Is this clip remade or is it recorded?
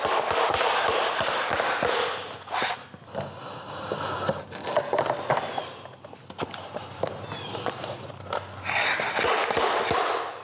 recorded